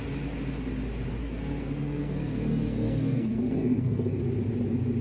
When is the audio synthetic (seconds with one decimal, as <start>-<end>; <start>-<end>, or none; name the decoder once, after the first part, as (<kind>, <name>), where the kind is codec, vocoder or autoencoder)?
1.2-4.2 (codec, SNAC)